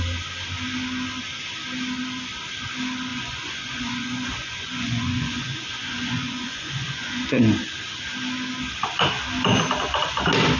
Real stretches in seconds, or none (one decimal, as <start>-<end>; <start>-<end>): 0.0-3.1; 7.2-10.6